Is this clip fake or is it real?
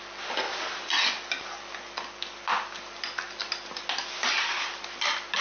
real